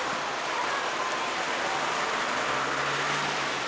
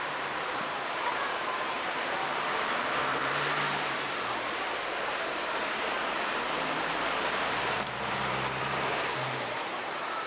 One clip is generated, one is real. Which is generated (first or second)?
second